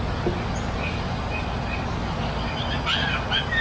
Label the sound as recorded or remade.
recorded